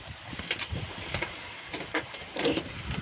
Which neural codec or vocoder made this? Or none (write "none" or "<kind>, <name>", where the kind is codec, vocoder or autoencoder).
vocoder, BigVGAN v2